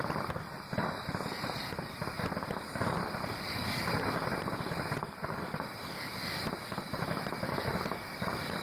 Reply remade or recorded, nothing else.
recorded